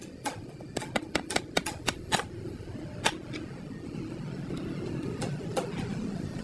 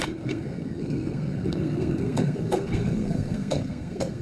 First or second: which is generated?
second